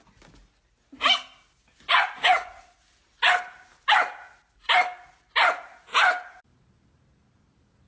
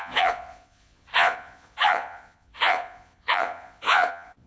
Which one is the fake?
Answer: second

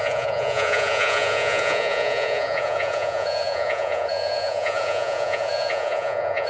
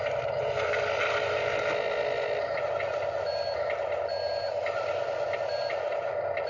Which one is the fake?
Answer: first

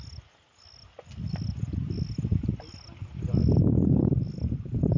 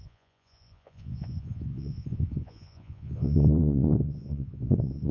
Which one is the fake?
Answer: second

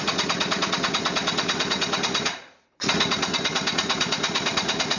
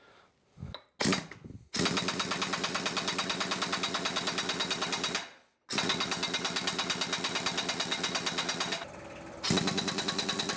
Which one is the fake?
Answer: first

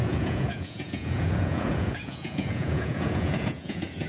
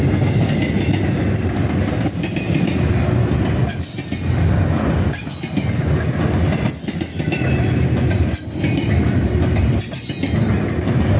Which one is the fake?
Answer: first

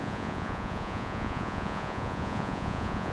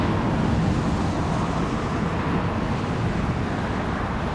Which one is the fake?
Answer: first